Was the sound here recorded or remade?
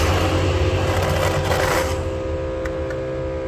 recorded